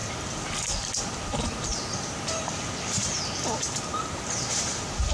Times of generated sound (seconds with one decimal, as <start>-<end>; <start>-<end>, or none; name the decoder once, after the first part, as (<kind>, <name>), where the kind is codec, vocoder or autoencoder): none

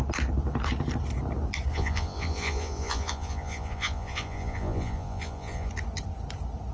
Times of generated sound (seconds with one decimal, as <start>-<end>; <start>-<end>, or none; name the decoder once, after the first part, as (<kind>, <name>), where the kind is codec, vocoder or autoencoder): 1.7-5.7 (vocoder, Vocos)

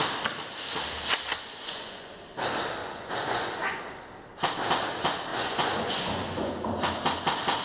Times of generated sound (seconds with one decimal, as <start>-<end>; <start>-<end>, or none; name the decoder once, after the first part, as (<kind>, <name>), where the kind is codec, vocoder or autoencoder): 1.3-2.1 (vocoder, Vocos); 2.8-4.0; 5.3-6.5

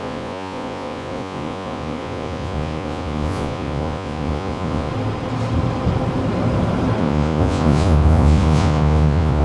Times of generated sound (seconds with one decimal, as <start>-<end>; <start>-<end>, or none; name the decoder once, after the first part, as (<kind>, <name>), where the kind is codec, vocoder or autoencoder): 0.0-4.9 (vocoder, Vocos); 7.0-9.4

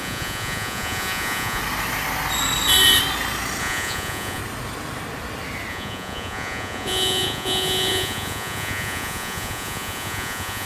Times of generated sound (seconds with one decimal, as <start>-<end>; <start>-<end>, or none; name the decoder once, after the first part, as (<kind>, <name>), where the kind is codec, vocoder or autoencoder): 0.0-1.6 (vocoder, Vocos); 3.6-4.4; 5.7-10.7

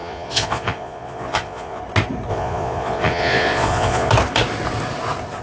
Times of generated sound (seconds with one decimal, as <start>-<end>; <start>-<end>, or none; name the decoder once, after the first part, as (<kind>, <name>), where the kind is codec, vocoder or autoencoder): 0.0-1.8 (vocoder, Vocos); 2.3-4.1